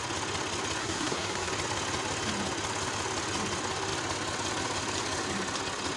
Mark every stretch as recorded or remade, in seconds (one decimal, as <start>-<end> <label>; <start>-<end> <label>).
0.0-0.8 recorded; 0.8-1.5 remade; 1.5-6.0 recorded